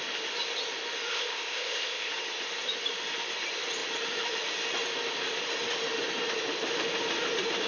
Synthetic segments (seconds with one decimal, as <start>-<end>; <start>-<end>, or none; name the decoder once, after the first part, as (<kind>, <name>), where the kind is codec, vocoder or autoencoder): 1.1-2.1 (codec, ZipCodec)